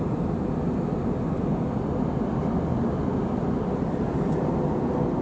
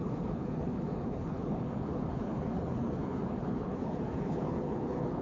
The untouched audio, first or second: first